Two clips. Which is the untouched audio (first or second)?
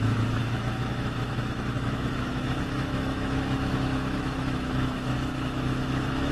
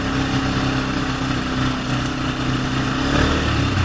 second